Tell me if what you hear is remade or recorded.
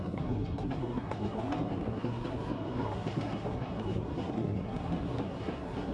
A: remade